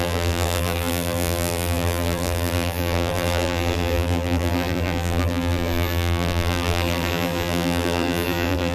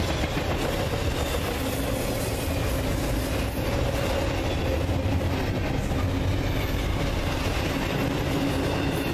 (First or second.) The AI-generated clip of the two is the first